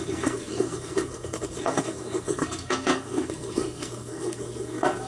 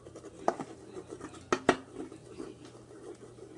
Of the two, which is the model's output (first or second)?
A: first